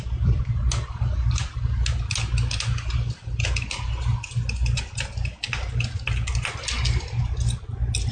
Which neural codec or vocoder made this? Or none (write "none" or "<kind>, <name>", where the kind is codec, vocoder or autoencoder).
none